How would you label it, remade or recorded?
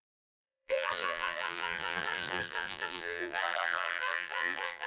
remade